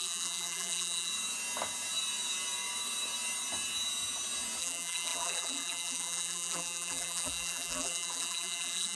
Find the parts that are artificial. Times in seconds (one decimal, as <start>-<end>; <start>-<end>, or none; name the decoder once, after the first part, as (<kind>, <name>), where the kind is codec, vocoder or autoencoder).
0.0-1.1 (vocoder, BigVGAN v2); 4.6-8.9